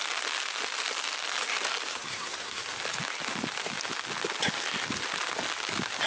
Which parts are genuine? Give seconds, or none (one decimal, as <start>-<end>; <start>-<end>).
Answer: 0.0-1.9; 2.6-6.1